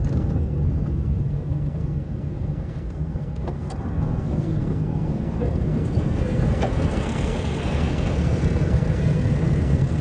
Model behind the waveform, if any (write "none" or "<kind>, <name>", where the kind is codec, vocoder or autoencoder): codec, SNAC